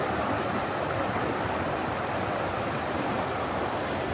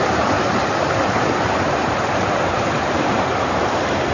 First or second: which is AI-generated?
second